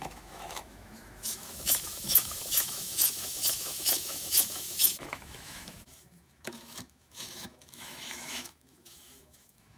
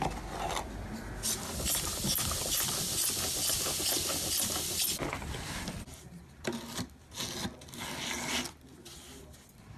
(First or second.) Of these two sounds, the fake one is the first